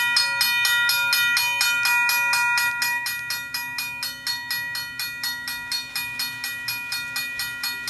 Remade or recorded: recorded